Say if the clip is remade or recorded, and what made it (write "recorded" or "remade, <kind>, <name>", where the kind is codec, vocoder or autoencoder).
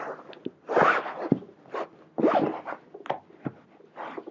recorded